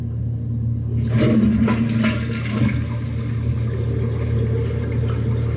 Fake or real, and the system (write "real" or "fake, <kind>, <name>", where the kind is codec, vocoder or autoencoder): real